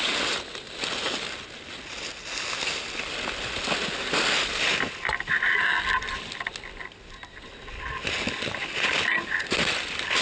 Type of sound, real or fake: real